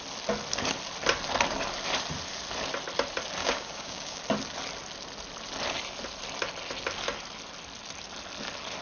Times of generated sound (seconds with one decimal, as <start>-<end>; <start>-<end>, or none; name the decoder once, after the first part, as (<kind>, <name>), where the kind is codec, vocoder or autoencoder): 3.4-4.2 (codec, DAC)